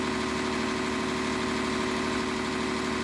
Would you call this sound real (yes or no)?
yes